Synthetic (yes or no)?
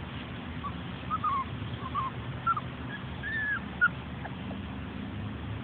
no